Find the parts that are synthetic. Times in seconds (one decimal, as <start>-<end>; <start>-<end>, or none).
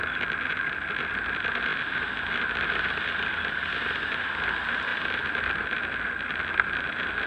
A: none